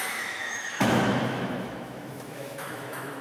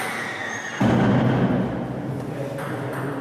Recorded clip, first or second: second